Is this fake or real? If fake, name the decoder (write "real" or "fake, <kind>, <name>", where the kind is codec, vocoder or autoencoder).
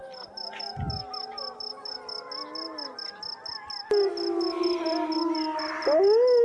real